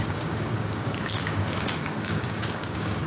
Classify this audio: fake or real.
fake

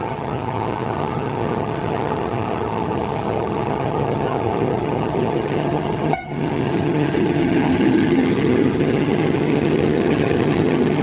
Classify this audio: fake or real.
fake